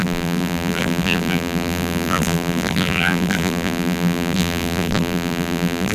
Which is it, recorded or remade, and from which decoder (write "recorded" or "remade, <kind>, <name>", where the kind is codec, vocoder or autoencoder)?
remade, vocoder, BigVGAN v2